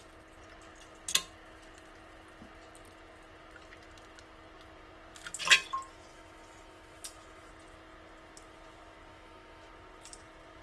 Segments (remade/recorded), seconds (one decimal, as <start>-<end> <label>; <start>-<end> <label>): 0.0-6.1 recorded; 6.1-7.5 remade; 7.5-9.1 recorded; 9.1-9.7 remade; 9.7-10.6 recorded